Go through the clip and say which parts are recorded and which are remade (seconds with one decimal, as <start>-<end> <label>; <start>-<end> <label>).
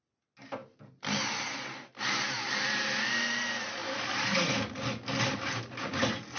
0.0-6.4 recorded